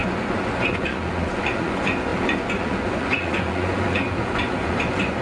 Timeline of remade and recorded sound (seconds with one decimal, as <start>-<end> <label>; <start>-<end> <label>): 0.0-5.2 remade